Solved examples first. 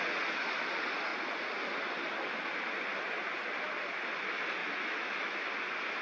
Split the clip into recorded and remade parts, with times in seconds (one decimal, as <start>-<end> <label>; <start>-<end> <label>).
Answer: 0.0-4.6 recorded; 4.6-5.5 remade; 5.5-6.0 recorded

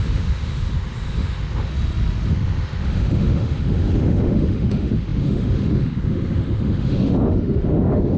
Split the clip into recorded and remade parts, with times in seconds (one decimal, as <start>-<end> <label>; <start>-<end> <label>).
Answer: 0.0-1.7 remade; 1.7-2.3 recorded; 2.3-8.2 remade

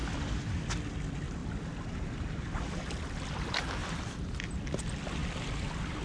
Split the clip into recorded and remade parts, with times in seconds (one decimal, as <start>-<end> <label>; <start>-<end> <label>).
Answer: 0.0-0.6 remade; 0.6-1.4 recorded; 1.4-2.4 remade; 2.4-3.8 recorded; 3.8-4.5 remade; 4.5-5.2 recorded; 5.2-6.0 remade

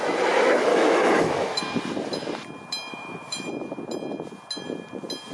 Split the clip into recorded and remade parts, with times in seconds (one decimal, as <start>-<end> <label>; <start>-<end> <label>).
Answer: 0.0-0.7 recorded; 0.7-1.6 remade; 1.6-2.9 recorded; 2.9-3.5 remade; 3.5-5.3 recorded